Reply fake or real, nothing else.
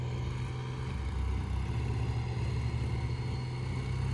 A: real